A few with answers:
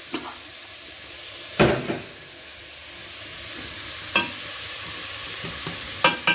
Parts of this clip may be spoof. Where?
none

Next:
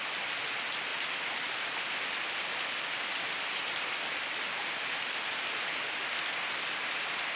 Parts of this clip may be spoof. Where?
none

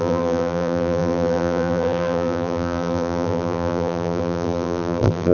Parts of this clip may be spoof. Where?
0.0-5.3 (vocoder, BigVGAN v2)

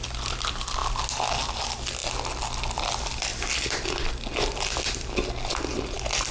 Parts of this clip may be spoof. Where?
none

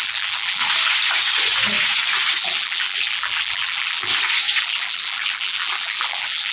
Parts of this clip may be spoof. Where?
0.0-0.6 (vocoder, BigVGAN v2); 2.4-4.1; 4.6-6.5

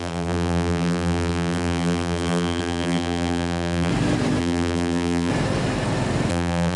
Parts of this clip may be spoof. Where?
0.0-3.9 (vocoder, BigVGAN v2); 4.4-5.3; 6.3-6.8